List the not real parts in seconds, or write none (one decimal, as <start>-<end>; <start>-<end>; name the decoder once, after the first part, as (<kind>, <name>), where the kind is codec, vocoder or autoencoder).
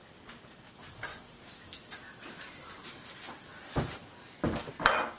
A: none